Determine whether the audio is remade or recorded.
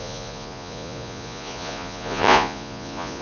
remade